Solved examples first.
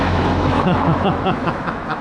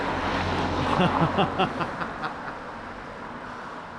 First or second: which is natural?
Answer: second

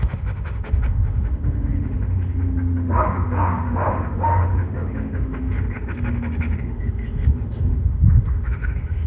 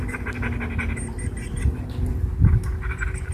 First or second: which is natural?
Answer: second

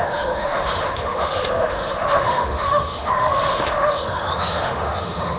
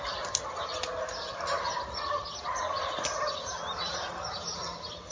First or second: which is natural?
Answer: second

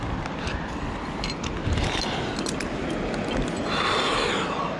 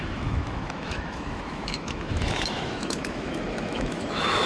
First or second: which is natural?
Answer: first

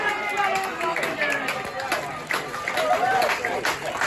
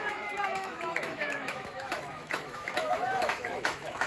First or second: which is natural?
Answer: first